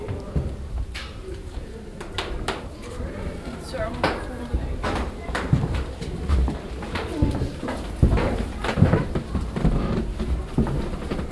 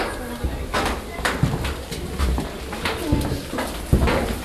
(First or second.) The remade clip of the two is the first